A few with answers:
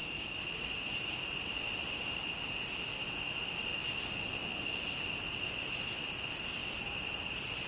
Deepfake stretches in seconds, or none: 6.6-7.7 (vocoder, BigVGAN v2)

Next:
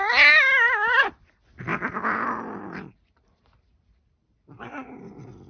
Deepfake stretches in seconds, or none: 1.7-5.0 (vocoder, BigVGAN v2)

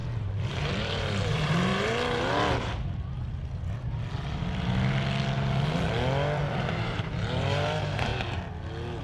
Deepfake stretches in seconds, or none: 0.0-1.7 (vocoder, BigVGAN v2); 6.8-8.1

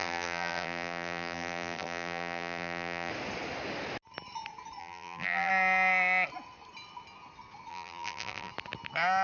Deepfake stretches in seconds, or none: 0.0-3.1 (vocoder, BigVGAN v2); 4.8-5.5; 7.7-8.5

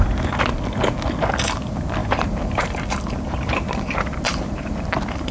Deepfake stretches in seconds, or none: 2.0-5.3 (vocoder, BigVGAN v2)

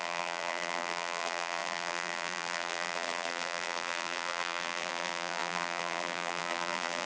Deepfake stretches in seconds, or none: 0.0-7.1 (vocoder, BigVGAN v2)

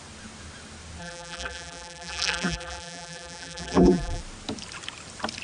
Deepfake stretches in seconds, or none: 1.0-4.2 (vocoder, BigVGAN v2)